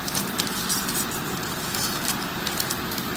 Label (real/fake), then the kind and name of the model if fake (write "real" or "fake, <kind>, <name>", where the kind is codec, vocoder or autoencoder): real